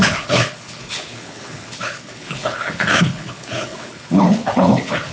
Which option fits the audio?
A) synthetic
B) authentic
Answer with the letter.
A